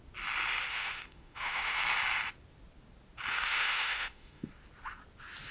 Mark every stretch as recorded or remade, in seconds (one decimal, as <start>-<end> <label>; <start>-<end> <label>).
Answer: 0.0-0.7 recorded; 0.7-1.8 remade; 1.8-3.3 recorded; 3.3-4.5 remade; 4.5-5.5 recorded